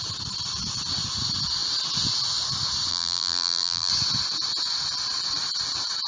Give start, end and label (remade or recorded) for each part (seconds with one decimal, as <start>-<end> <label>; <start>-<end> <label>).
0.0-2.9 recorded; 2.9-3.9 remade; 3.9-6.1 recorded